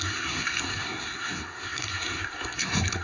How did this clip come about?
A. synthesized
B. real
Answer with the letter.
A